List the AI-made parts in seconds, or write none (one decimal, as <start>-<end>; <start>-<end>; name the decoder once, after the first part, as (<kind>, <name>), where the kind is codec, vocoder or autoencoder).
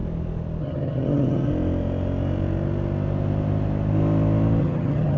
0.6-1.5 (vocoder, HiFi-GAN); 4.6-5.2